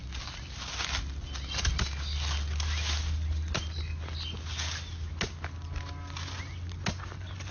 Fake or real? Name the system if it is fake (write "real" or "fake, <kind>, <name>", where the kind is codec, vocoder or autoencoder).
real